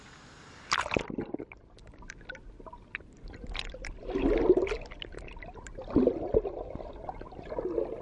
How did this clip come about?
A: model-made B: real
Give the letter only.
B